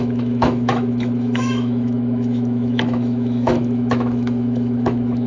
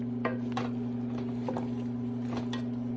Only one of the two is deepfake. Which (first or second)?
first